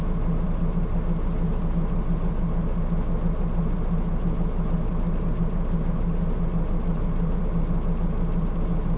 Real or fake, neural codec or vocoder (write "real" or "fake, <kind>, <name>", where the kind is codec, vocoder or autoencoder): real